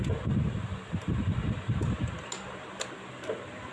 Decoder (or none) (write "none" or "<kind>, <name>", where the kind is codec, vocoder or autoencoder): none